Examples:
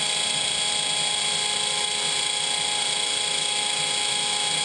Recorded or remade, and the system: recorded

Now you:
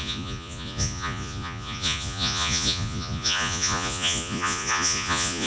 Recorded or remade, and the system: remade, vocoder, Vocos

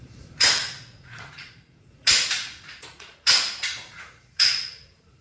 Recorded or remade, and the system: remade, vocoder, Vocos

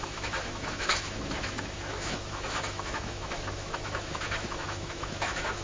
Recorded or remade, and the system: remade, autoencoder, DAC-VAE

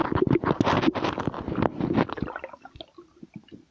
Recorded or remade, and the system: recorded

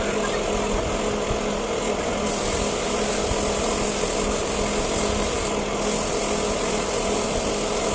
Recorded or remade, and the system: recorded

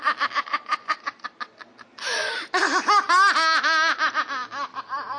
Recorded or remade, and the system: recorded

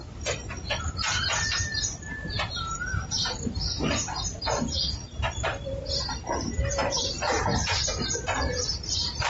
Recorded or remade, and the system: recorded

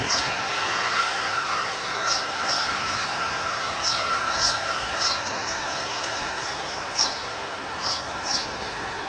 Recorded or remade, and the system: remade, codec, SNAC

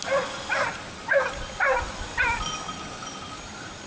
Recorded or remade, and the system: recorded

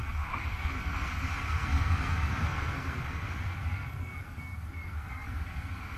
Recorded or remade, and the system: remade, codec, SNAC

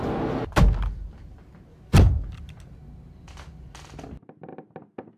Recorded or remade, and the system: recorded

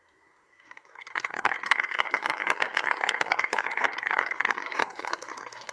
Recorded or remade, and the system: remade, codec, SNAC